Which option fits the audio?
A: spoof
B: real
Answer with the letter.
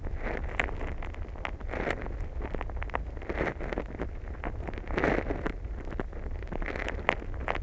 B